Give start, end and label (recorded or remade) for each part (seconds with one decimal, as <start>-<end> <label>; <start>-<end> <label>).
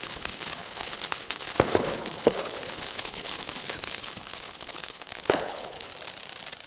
0.0-5.9 remade; 5.9-6.7 recorded